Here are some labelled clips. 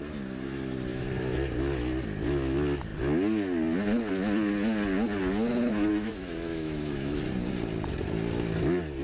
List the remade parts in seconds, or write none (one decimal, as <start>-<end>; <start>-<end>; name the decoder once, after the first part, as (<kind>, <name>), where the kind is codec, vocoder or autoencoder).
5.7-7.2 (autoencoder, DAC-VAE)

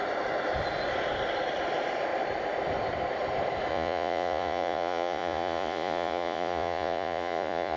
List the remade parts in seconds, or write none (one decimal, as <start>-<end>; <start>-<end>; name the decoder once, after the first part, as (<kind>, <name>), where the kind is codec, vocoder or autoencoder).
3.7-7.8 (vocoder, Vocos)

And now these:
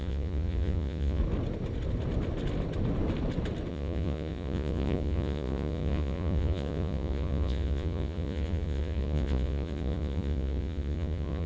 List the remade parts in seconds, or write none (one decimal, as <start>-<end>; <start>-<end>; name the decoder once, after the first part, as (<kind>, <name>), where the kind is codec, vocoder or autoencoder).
0.0-1.2 (vocoder, Vocos); 3.7-11.5

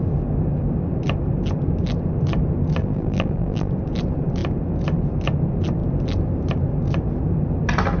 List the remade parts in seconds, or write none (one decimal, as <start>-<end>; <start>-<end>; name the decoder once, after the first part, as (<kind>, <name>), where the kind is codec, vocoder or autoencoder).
2.8-3.7 (vocoder, BigVGAN v2)

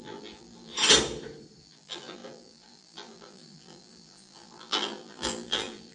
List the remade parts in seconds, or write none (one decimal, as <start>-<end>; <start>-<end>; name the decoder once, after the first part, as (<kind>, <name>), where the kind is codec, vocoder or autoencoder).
0.0-0.7 (vocoder, BigVGAN v2); 1.6-5.9

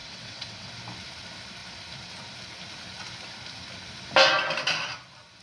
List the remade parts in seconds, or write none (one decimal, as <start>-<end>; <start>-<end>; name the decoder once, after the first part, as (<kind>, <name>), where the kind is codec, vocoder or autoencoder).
0.0-0.7 (vocoder, WaveNeXt)

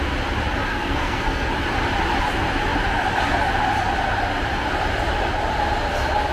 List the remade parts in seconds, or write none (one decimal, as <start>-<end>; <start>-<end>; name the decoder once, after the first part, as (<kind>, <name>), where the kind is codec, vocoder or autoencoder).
0.7-1.5 (codec, SNAC)